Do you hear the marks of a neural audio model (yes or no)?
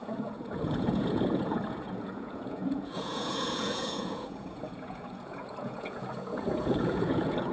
yes